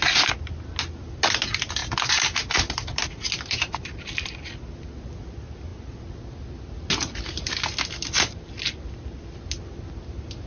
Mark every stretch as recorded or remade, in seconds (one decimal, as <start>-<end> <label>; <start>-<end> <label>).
0.0-10.5 recorded